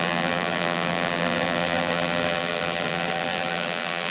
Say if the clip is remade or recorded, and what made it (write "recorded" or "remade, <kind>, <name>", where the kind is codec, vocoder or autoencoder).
remade, vocoder, BigVGAN v2